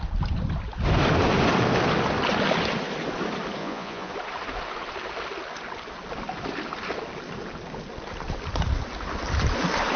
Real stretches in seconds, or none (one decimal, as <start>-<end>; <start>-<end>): 0.0-3.6; 4.1-10.0